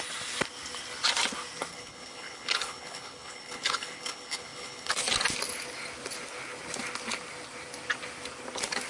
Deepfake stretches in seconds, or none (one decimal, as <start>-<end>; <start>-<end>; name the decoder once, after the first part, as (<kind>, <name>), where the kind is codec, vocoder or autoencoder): 1.7-4.9 (codec, HILCodec)